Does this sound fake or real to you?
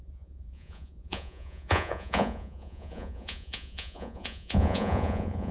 fake